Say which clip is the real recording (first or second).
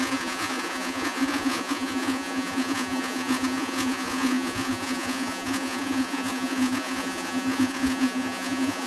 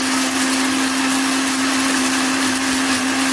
second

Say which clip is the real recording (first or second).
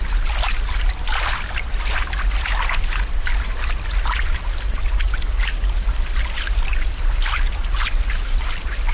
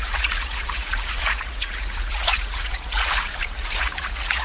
first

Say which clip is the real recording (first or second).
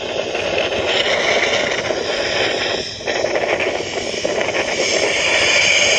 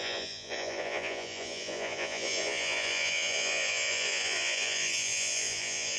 first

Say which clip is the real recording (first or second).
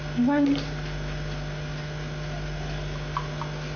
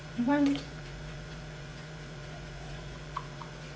first